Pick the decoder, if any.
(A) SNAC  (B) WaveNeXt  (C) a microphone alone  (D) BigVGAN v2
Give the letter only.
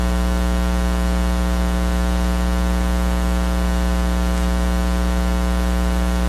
C